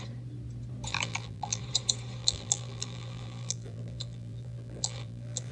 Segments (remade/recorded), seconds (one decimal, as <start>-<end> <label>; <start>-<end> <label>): 0.0-0.9 recorded; 0.9-1.6 remade; 1.6-2.2 recorded; 2.2-5.5 remade